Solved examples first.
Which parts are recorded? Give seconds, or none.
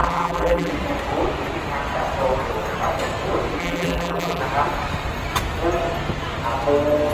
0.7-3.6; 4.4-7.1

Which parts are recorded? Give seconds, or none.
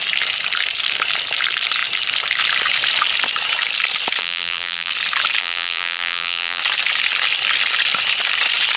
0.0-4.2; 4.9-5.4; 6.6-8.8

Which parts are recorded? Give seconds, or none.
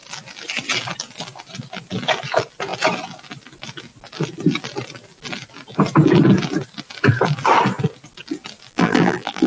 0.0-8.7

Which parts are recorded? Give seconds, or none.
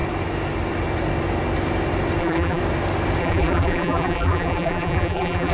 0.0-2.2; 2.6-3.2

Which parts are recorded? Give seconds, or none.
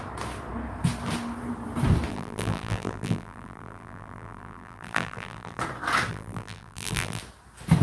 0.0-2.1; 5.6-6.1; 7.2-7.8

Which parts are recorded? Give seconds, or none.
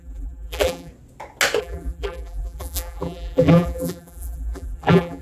0.9-1.6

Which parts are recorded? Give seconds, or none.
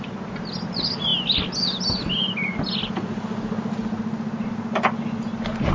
0.0-5.7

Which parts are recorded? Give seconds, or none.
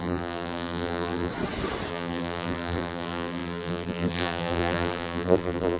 1.3-1.9